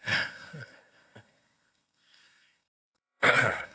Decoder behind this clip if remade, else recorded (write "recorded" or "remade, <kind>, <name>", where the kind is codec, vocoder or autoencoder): remade, codec, SNAC